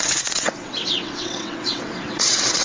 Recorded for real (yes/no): no